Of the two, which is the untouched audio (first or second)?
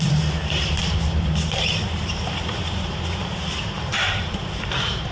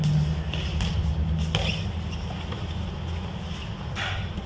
second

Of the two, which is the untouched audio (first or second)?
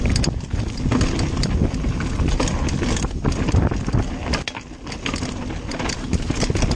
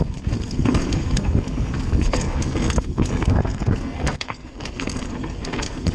first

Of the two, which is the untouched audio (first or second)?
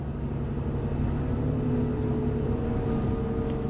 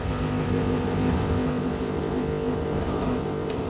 first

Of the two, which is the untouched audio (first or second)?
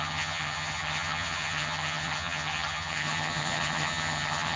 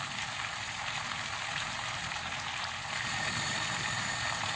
second